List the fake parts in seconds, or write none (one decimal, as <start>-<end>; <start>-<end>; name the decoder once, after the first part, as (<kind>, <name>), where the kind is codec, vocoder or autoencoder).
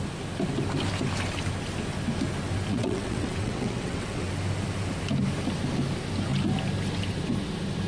2.7-4.3 (vocoder, WaveNeXt)